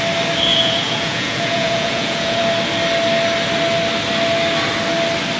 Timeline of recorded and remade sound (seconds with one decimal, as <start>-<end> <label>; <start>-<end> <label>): 0.0-0.5 recorded; 0.5-2.4 remade; 2.4-5.4 recorded